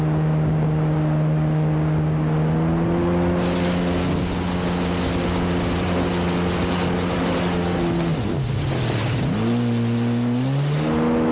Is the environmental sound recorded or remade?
recorded